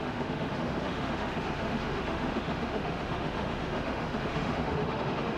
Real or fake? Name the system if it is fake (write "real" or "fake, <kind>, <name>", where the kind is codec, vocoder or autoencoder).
fake, autoencoder, DAC-VAE